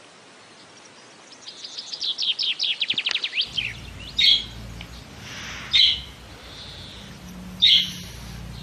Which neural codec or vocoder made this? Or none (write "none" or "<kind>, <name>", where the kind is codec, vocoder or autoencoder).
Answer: none